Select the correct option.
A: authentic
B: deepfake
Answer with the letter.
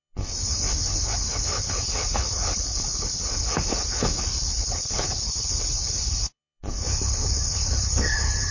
B